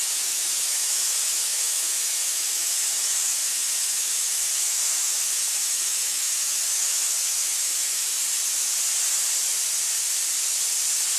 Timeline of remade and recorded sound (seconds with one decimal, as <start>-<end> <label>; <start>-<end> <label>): 0.0-8.1 remade; 8.1-11.2 recorded